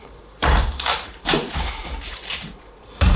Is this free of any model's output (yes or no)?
no